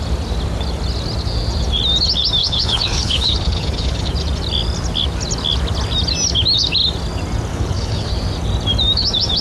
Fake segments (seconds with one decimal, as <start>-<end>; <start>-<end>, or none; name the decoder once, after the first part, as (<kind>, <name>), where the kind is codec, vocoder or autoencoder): 2.4-4.1 (codec, HILCodec); 7.5-8.1